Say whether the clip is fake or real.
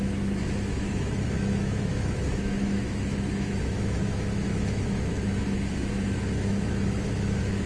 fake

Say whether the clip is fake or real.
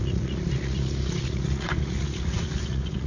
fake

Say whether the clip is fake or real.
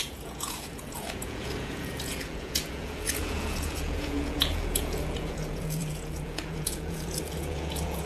fake